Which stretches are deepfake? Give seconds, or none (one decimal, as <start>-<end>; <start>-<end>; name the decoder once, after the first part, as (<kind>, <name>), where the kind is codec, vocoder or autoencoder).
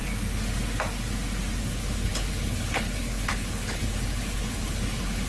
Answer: 1.6-5.3 (codec, HILCodec)